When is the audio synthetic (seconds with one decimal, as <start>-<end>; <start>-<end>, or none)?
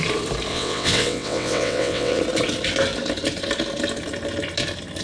0.5-2.2